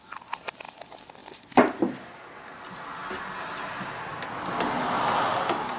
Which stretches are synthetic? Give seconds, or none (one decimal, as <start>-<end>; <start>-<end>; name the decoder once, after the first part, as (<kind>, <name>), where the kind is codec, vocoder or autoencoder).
1.2-1.8 (vocoder, BigVGAN v2)